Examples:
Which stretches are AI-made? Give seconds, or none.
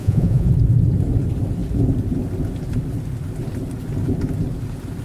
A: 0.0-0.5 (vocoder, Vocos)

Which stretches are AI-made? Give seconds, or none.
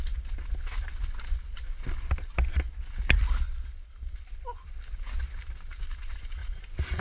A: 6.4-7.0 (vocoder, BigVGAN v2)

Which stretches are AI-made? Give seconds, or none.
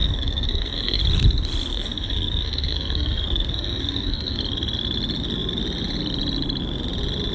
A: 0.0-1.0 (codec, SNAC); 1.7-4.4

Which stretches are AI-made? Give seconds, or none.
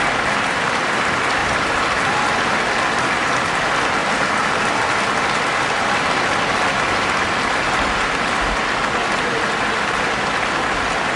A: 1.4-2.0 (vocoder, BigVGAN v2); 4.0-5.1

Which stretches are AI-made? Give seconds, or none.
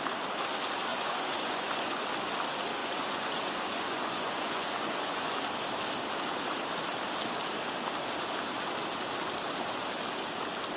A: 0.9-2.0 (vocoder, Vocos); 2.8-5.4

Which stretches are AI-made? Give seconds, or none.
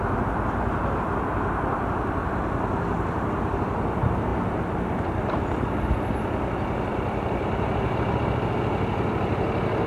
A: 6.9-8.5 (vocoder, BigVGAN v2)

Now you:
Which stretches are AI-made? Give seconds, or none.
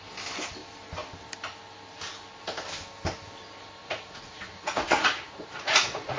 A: 3.8-6.2 (vocoder, Vocos)